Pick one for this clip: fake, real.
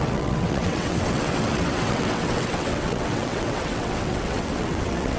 fake